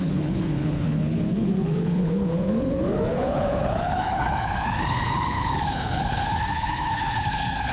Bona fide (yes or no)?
no